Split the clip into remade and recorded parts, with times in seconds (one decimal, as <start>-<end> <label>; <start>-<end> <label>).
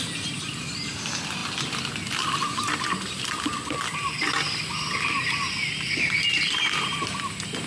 0.0-7.7 recorded